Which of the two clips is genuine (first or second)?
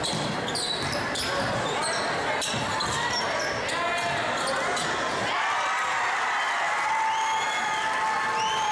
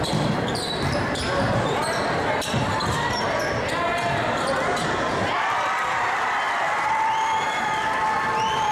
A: first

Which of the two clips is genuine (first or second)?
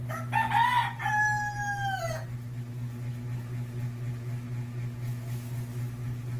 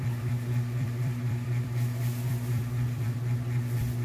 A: first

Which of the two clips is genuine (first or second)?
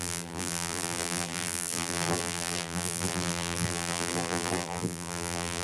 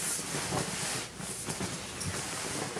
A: second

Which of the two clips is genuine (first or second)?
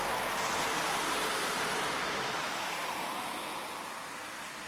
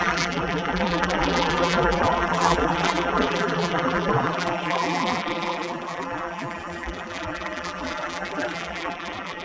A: first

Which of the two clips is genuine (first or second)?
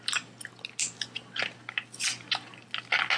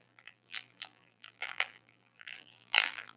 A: first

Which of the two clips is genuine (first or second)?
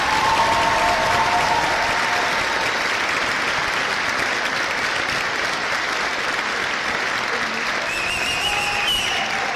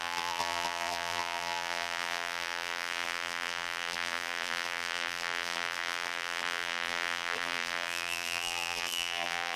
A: first